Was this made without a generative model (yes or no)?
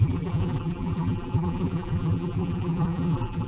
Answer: no